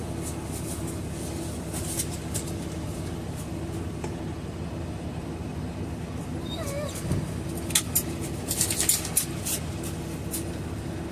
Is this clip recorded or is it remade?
recorded